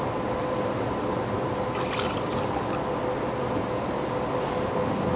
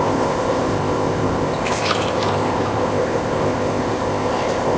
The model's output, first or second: second